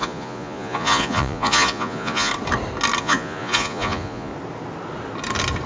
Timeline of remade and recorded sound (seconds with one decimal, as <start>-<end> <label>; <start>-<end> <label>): 0.0-2.3 remade; 2.3-3.0 recorded; 3.0-4.3 remade; 4.3-5.7 recorded